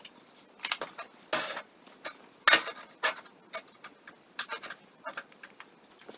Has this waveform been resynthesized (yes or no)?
no